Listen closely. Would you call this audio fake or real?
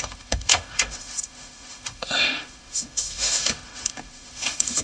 fake